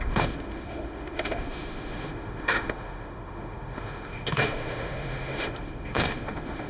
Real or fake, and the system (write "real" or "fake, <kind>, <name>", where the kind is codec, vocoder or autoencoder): fake, autoencoder, DAC-VAE